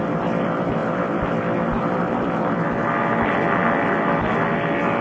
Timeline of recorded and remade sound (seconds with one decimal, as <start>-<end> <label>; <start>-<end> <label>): 0.0-5.0 recorded